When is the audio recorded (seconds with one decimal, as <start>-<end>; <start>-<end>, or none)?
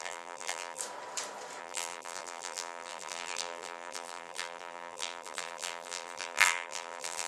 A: 0.8-1.6